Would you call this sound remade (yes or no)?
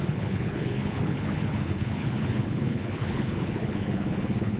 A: yes